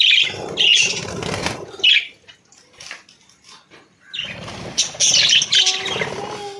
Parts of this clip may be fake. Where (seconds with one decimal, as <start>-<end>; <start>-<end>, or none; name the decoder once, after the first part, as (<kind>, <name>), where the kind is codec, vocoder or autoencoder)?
none